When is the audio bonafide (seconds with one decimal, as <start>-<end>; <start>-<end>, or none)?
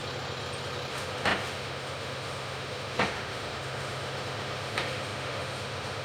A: 0.0-0.9